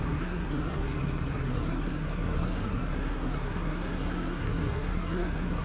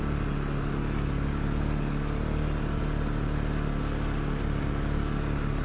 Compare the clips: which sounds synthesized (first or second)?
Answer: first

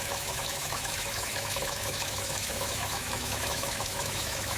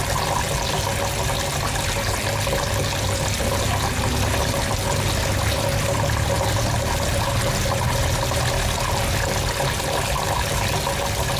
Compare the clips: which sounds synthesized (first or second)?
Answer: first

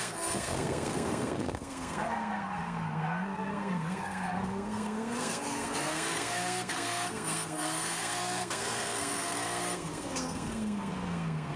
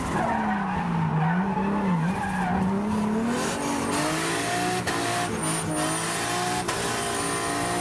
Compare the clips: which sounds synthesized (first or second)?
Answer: first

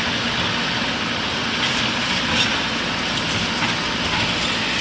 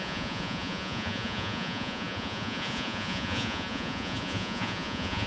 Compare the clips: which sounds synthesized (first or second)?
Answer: second